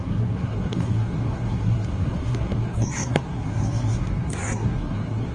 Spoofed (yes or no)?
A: yes